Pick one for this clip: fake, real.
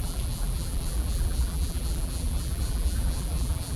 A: fake